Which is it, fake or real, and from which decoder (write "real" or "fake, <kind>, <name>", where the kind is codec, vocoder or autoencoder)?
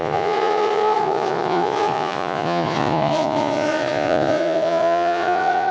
fake, vocoder, Vocos